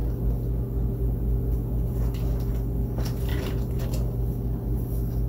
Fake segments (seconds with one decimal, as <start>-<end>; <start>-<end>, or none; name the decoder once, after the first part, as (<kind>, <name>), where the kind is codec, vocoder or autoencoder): 3.3-3.8 (vocoder, BigVGAN v2)